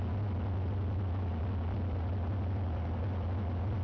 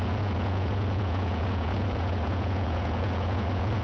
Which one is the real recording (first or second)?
first